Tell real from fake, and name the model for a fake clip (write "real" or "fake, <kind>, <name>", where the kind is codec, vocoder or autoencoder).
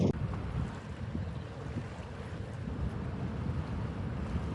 real